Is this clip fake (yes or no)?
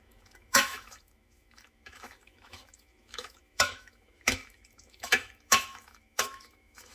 yes